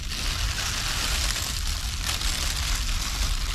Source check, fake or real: real